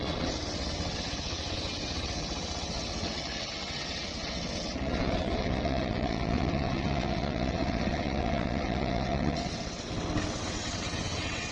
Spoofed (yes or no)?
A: yes